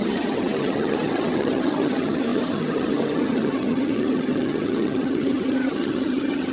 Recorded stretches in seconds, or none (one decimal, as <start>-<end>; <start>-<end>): none